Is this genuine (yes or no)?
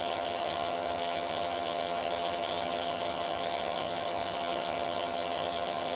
no